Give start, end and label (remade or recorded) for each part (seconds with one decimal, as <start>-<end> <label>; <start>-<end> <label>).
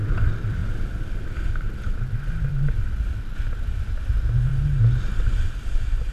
0.0-6.1 recorded